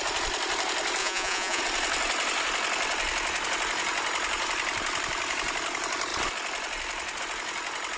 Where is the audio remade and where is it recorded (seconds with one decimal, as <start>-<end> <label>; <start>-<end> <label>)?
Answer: 0.0-1.0 recorded; 1.0-1.6 remade; 1.6-8.0 recorded